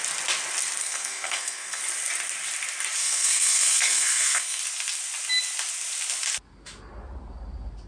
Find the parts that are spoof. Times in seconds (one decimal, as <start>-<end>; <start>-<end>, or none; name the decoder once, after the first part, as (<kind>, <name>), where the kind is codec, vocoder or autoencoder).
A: 0.8-1.8 (codec, SNAC); 3.0-4.6